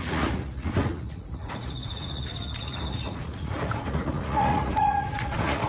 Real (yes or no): no